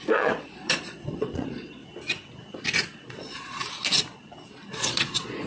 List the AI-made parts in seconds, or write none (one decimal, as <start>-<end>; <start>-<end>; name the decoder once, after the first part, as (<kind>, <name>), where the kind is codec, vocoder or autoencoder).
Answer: 0.0-1.8 (vocoder, Vocos); 3.2-3.6; 4.7-5.5